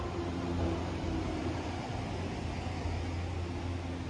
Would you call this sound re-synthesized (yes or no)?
no